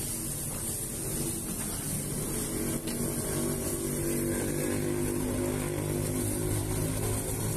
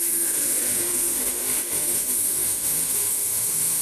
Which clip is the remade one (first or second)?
second